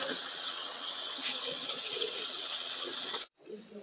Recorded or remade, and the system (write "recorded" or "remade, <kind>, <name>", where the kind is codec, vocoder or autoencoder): remade, vocoder, WaveNeXt